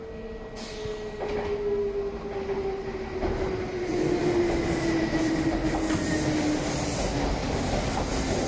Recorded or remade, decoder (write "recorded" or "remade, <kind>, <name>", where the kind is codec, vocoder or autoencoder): recorded